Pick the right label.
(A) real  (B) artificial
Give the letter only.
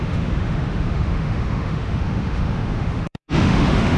B